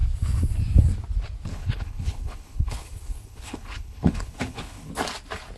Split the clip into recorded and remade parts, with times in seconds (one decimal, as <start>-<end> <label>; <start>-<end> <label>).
0.0-1.5 recorded; 1.5-4.9 remade; 4.9-5.6 recorded